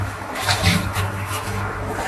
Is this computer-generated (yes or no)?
yes